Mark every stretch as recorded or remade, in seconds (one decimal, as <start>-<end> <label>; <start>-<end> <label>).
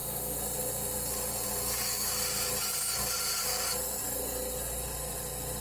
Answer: 0.0-5.6 recorded